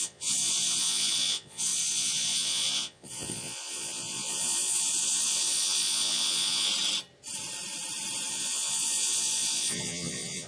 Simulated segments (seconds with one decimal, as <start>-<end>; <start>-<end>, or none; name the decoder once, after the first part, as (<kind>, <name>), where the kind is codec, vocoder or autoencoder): 0.0-6.7 (vocoder, Vocos); 8.3-10.5